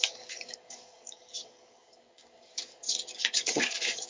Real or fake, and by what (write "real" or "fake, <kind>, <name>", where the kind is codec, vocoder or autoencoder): fake, codec, DAC